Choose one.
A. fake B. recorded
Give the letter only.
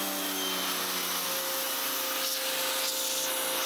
B